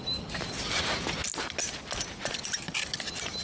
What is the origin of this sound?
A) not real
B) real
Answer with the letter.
B